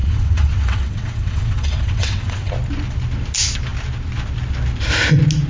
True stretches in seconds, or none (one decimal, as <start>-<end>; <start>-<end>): 2.5-5.5